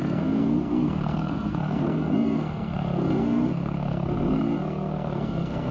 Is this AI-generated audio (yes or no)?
yes